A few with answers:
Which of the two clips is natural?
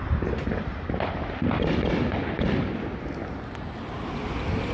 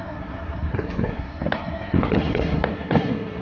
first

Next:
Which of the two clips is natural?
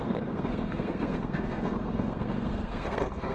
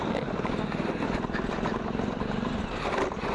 second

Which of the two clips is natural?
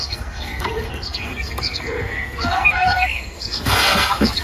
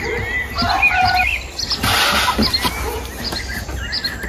second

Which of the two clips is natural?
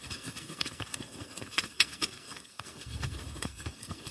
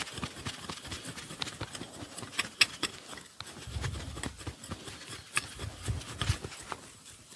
second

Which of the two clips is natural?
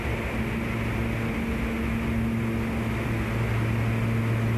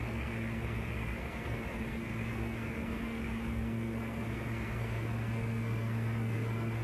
first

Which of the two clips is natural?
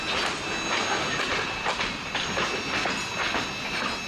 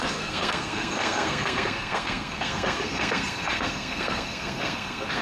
first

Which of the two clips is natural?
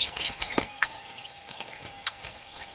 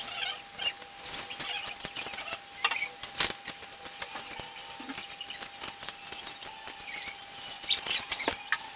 second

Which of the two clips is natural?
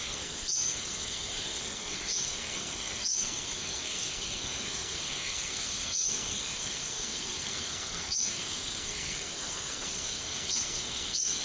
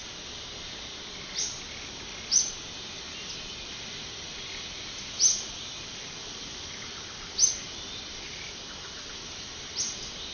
second